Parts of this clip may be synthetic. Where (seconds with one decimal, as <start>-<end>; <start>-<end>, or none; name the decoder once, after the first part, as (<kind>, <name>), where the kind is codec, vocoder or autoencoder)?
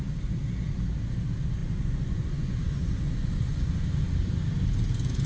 1.6-3.7 (vocoder, Vocos)